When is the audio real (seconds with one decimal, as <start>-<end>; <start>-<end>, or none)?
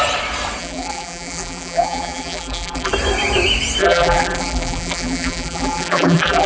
0.0-0.6; 2.9-3.8